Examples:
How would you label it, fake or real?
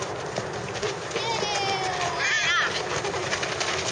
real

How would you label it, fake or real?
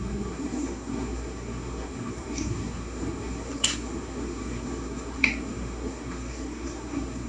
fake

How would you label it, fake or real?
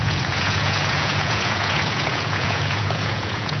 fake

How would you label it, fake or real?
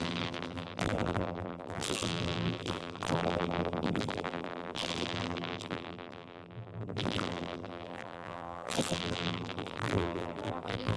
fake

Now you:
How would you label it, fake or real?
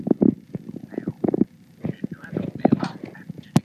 real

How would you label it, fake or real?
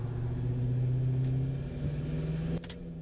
real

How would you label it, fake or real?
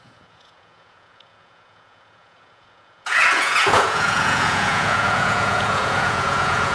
fake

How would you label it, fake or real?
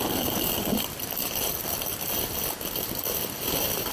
real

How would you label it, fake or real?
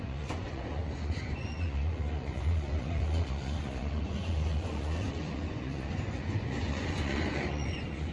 fake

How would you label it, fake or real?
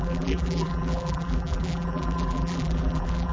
fake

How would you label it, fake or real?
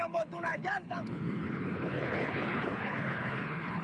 fake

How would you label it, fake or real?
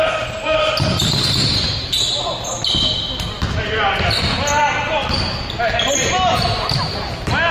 real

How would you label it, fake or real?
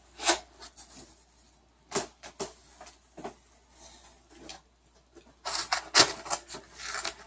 real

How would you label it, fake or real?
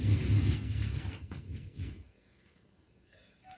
fake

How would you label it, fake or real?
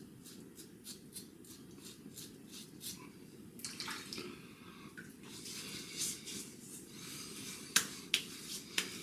real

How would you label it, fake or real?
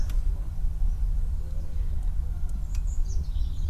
real